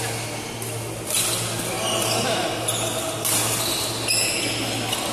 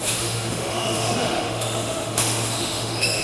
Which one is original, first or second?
first